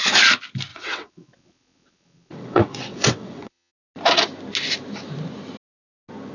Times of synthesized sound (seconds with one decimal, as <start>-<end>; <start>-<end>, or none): 0.7-3.7